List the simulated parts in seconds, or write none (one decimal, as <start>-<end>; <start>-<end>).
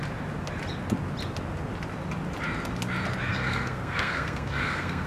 3.3-5.1